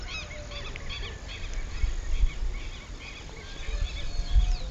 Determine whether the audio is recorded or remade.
recorded